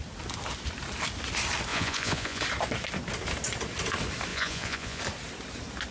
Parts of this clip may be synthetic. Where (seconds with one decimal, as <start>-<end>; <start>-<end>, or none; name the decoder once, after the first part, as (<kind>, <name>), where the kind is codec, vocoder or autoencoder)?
1.7-2.4 (vocoder, Vocos); 4.3-5.0